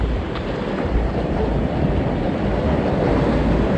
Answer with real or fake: real